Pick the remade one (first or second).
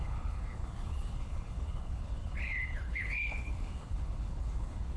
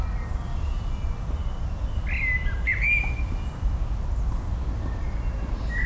first